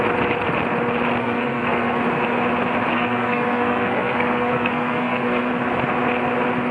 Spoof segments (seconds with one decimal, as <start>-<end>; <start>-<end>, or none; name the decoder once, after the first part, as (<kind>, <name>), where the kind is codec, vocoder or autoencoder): 1.2-2.0 (codec, SNAC); 2.9-5.5